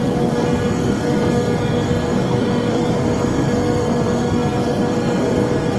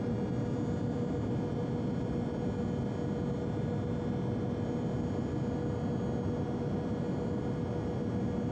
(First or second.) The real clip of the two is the second